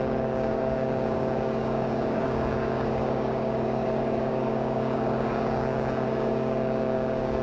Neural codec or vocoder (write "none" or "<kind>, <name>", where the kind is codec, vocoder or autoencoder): codec, DAC